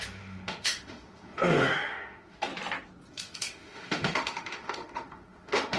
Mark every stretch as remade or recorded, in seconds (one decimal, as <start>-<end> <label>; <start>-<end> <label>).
0.0-2.5 remade; 2.5-3.1 recorded; 3.1-5.8 remade